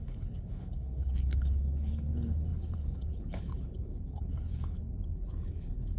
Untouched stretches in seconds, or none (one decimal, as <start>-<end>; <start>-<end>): none